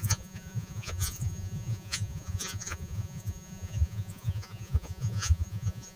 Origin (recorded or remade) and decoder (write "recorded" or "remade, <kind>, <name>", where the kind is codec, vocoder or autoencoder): remade, vocoder, Vocos